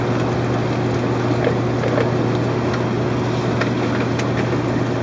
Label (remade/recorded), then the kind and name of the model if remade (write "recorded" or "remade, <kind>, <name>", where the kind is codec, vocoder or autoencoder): recorded